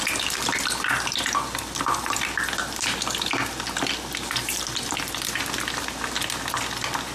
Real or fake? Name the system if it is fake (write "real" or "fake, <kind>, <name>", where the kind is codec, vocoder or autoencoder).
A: real